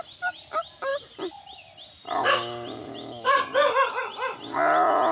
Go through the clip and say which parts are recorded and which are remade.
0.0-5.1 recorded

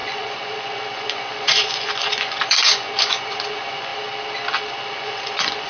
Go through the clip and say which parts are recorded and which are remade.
0.0-3.9 remade; 3.9-4.9 recorded; 4.9-5.7 remade

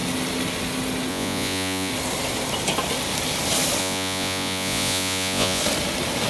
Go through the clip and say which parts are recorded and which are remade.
0.0-1.1 recorded; 1.1-1.9 remade; 1.9-3.8 recorded; 3.8-5.6 remade; 5.6-6.3 recorded

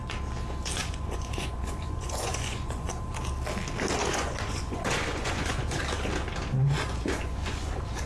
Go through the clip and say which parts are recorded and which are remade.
0.0-0.8 recorded; 0.8-2.9 remade; 2.9-4.0 recorded; 4.0-5.8 remade; 5.8-6.5 recorded; 6.5-8.1 remade

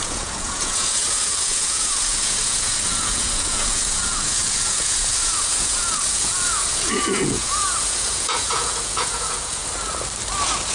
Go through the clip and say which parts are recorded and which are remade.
0.0-9.6 remade; 9.6-10.7 recorded

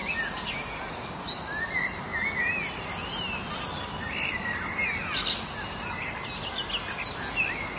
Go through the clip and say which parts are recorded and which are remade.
0.0-7.8 recorded